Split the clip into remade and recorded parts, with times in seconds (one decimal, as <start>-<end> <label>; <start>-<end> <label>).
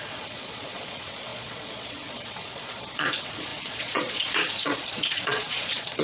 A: 0.0-6.0 remade